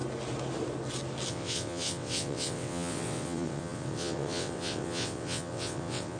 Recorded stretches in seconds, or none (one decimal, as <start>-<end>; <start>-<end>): 0.0-1.3